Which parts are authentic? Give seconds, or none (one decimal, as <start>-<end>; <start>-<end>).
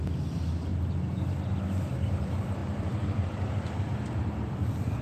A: 0.7-2.1